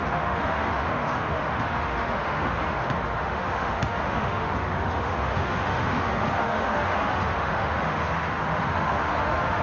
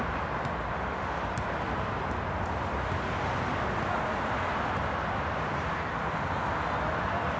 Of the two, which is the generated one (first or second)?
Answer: first